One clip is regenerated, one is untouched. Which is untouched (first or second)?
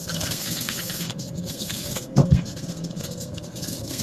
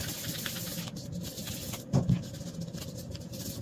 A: second